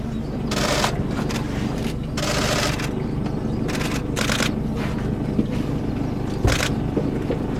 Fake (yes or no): no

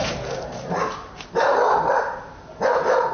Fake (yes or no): yes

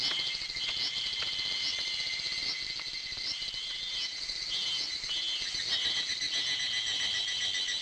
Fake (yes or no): no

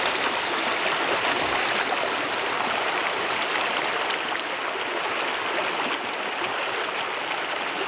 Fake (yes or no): no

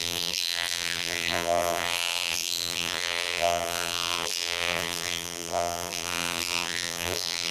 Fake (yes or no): yes